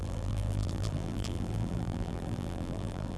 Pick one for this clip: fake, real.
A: fake